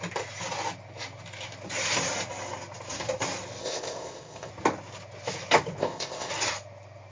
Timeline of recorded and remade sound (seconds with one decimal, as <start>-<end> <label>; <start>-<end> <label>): 0.0-3.6 recorded; 3.6-4.5 remade; 4.5-5.8 recorded; 5.8-6.3 remade; 6.3-7.1 recorded